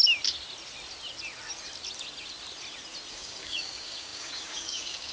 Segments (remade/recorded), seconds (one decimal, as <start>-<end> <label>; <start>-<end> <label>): 0.0-3.1 recorded; 3.1-5.1 remade